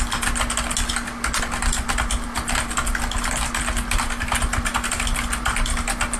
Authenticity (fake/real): real